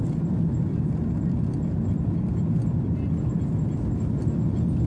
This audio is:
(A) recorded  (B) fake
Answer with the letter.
B